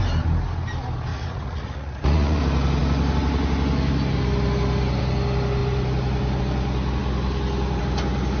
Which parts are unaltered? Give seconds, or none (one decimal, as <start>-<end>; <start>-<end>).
0.0-1.1; 2.4-8.4